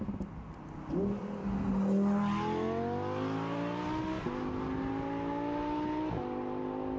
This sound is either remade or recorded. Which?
recorded